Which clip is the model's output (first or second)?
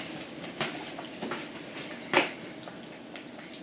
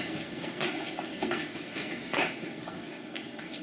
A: second